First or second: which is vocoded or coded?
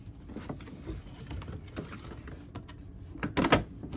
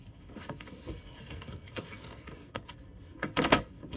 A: second